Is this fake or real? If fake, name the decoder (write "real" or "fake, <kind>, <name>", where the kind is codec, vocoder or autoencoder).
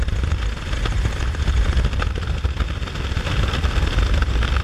fake, vocoder, BigVGAN v2